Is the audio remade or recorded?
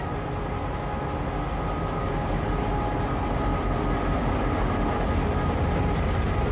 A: recorded